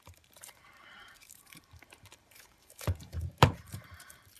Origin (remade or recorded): remade